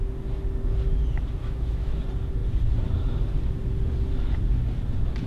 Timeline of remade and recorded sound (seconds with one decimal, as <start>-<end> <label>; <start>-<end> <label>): 0.0-1.4 recorded; 1.4-2.0 remade; 2.0-5.3 recorded